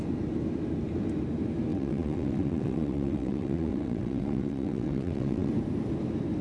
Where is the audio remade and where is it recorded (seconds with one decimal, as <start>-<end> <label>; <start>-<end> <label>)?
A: 0.0-1.7 recorded; 1.7-5.5 remade; 5.5-6.4 recorded